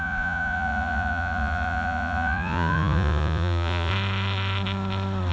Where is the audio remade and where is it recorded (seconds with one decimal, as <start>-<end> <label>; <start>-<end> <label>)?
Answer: 0.0-3.9 remade; 3.9-5.3 recorded